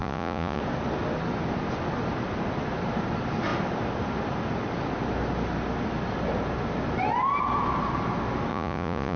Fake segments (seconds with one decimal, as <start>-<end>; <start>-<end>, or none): 0.0-0.6; 8.5-9.2